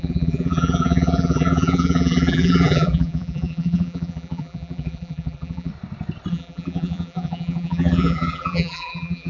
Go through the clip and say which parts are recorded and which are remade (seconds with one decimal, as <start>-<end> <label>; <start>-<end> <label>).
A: 0.0-5.7 remade; 5.7-6.3 recorded; 6.3-9.3 remade